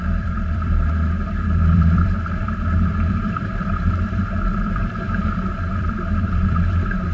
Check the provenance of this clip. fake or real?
fake